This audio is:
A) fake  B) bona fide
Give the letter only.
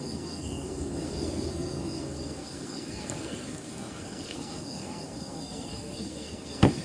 A